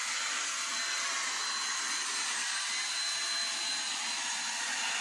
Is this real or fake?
real